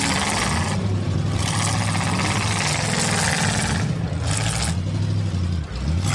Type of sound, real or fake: real